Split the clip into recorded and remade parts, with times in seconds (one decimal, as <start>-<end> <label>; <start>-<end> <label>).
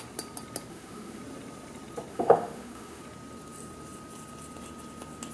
0.0-0.7 recorded; 0.7-1.2 remade; 1.2-2.1 recorded; 2.1-3.0 remade; 3.0-5.3 recorded